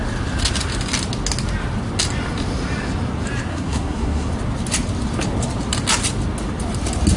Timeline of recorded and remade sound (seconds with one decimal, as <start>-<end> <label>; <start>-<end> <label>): 0.0-3.5 recorded; 3.5-4.3 remade; 4.3-7.2 recorded